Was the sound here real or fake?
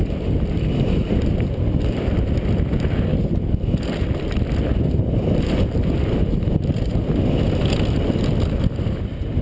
real